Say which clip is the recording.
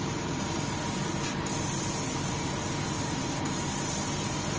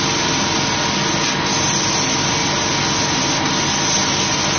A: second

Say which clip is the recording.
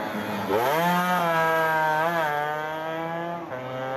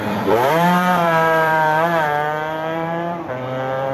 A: first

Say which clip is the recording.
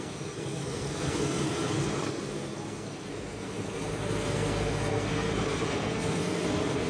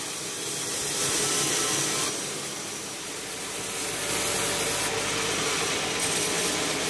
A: second